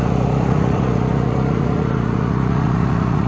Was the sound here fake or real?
fake